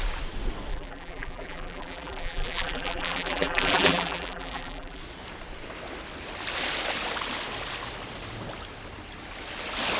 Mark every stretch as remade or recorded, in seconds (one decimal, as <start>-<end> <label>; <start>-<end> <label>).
0.0-0.7 recorded; 0.7-5.0 remade; 5.0-10.0 recorded